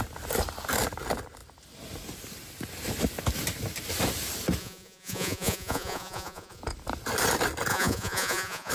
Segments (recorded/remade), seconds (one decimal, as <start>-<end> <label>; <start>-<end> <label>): 0.0-4.6 recorded; 4.6-6.6 remade; 6.6-7.7 recorded; 7.7-8.7 remade